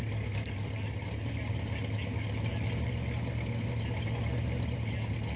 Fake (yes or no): no